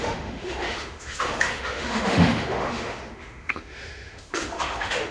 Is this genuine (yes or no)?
no